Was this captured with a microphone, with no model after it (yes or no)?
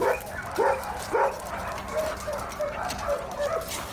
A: yes